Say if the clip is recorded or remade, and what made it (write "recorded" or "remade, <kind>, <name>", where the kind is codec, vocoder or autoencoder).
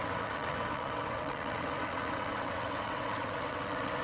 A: remade, vocoder, WaveNeXt